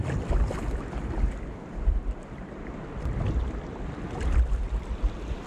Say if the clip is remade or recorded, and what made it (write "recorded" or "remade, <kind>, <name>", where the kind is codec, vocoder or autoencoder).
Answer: recorded